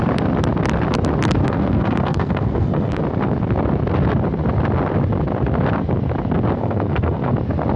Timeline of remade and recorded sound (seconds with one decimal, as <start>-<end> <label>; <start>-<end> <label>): 0.0-1.4 recorded; 1.4-3.0 remade; 3.0-6.6 recorded; 6.6-7.3 remade; 7.3-7.8 recorded